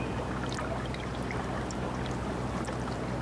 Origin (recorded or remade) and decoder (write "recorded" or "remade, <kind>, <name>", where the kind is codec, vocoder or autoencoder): recorded